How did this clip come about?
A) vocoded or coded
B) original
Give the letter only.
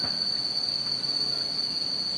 B